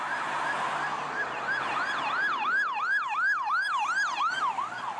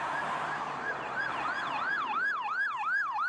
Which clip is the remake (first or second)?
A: second